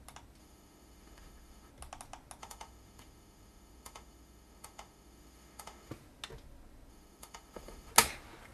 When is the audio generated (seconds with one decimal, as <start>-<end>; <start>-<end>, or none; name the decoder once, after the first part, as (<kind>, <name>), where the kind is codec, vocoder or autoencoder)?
0.4-1.7 (autoencoder, DAC-VAE); 2.4-5.9; 6.9-7.9

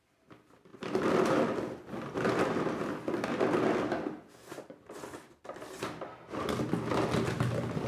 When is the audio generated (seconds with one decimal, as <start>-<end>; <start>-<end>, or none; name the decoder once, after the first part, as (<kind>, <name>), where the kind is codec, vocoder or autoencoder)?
none